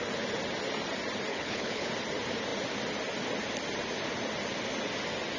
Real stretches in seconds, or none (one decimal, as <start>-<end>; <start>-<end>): 0.0-1.3; 1.9-5.4